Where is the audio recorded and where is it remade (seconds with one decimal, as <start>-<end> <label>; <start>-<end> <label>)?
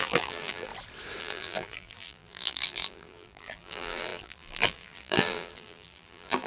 0.0-0.7 remade; 0.7-1.2 recorded; 1.2-6.5 remade